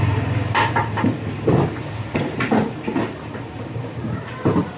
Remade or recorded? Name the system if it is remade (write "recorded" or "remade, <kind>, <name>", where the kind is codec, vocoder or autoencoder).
remade, vocoder, BigVGAN v2